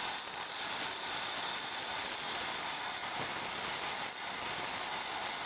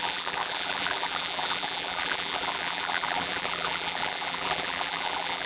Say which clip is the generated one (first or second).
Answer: second